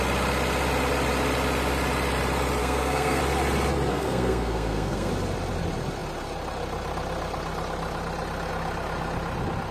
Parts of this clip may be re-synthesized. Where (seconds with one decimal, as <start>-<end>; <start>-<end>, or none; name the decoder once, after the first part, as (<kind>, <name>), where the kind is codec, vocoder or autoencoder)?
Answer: 2.6-3.2 (codec, SNAC); 3.9-5.1